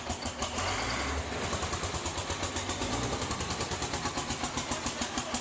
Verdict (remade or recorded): recorded